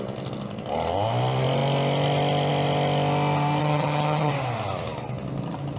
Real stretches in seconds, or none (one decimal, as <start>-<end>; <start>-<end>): 0.0-3.6; 4.3-5.8